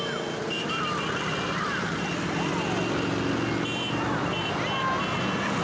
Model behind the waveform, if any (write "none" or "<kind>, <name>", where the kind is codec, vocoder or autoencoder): none